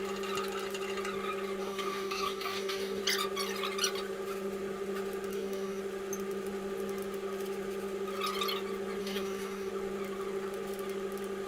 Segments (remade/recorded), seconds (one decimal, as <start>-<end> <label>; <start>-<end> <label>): 0.0-1.6 recorded; 1.6-3.0 remade; 3.0-5.3 recorded; 5.3-5.8 remade; 5.8-9.0 recorded; 9.0-9.7 remade; 9.7-11.5 recorded